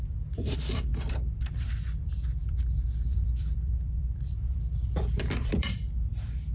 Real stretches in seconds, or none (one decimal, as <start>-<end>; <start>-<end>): 0.0-0.9; 1.4-2.4; 5.8-6.5